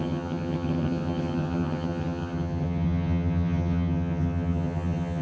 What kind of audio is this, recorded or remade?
remade